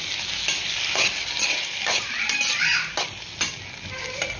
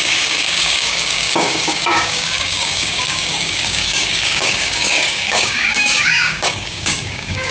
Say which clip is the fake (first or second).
second